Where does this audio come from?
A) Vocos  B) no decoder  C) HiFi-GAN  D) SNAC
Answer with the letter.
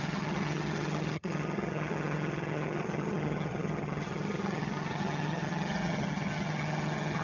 C